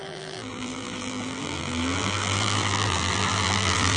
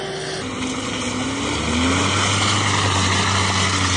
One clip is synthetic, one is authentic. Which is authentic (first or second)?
second